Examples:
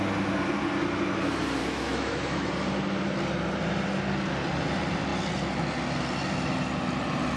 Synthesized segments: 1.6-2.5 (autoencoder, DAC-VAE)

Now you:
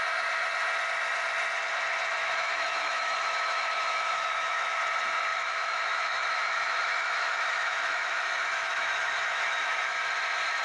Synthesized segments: 2.2-4.8 (autoencoder, DAC-VAE); 5.3-10.0

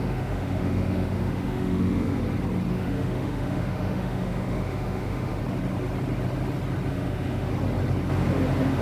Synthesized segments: 0.0-2.2 (autoencoder, DAC-VAE); 2.7-5.4; 6.9-7.5

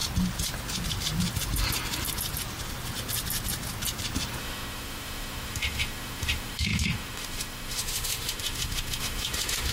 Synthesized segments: 4.4-9.7 (autoencoder, DAC-VAE)